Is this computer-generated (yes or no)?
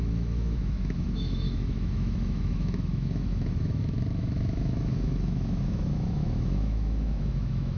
yes